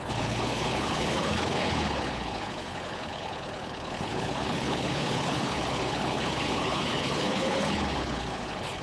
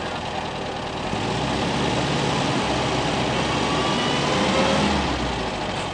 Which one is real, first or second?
second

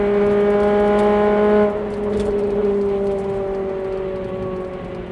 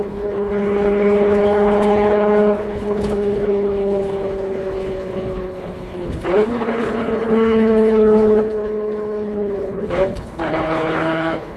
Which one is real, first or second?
first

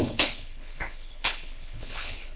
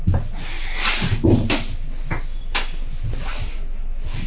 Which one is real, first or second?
second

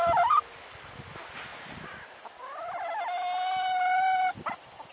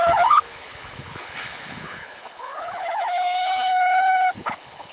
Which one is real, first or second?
first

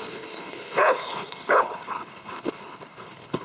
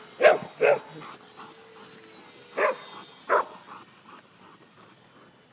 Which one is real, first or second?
second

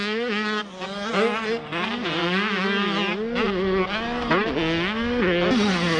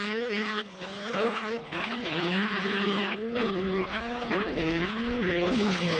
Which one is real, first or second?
first